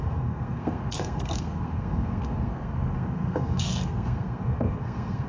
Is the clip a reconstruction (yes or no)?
yes